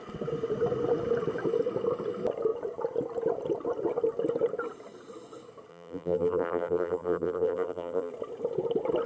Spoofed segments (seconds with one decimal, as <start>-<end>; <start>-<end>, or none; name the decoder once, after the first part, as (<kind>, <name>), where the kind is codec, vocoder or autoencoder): 5.7-8.1 (vocoder, BigVGAN v2)